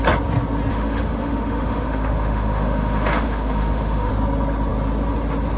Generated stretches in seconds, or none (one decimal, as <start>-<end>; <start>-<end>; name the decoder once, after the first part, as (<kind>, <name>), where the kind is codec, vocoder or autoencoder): 0.7-4.1 (autoencoder, DAC-VAE)